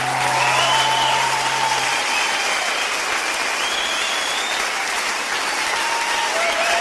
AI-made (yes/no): no